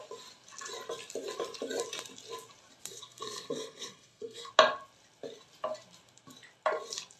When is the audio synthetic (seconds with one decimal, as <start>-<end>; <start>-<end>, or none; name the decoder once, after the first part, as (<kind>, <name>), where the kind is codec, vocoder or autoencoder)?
2.9-4.5 (codec, SNAC)